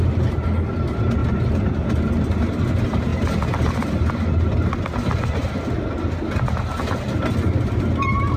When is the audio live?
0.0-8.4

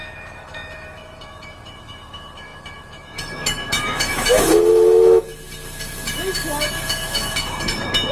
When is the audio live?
none

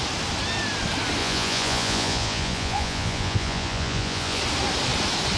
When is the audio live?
0.0-1.2; 4.4-5.4

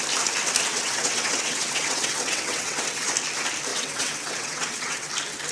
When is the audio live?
0.0-0.7; 3.1-3.7; 5.1-5.5

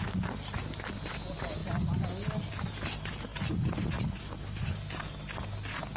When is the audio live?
0.0-6.0

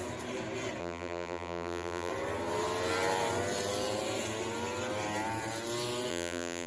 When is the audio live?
0.0-0.8; 2.1-6.1

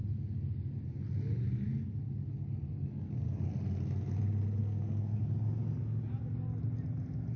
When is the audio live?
0.0-2.7; 3.5-4.6; 5.2-7.4